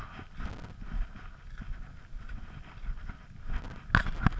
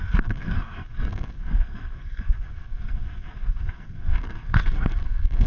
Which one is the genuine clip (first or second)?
first